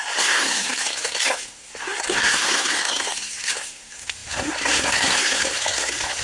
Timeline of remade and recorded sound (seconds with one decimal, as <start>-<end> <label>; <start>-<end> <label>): 0.0-6.2 remade